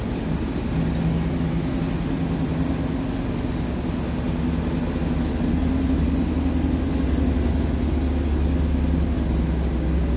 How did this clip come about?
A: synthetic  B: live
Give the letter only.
B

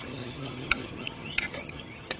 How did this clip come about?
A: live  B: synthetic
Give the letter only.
B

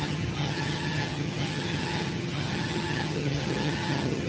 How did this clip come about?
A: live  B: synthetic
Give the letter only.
B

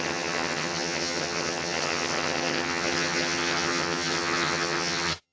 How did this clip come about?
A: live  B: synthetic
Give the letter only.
B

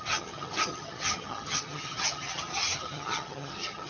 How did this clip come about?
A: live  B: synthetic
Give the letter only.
B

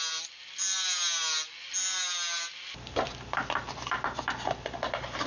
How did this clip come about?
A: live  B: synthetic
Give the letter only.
A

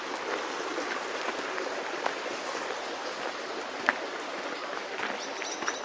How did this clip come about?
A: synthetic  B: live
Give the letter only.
B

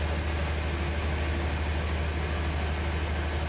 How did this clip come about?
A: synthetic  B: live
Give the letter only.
B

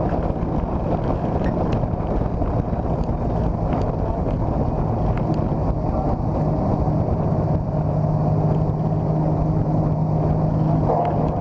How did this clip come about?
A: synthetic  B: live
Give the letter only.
B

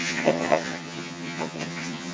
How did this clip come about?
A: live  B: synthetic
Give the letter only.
B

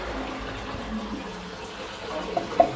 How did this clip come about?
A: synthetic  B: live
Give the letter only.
B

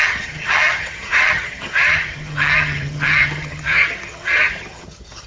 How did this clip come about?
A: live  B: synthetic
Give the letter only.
B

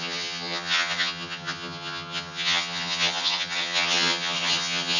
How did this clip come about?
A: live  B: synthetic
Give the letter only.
B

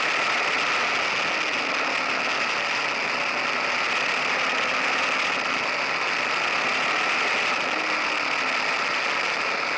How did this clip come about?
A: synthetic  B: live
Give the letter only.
B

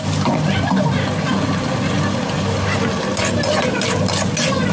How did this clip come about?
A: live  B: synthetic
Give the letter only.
A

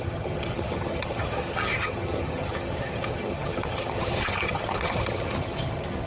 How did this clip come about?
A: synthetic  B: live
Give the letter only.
A